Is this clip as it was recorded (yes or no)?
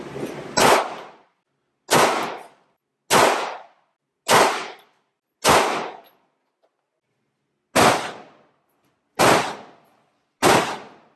yes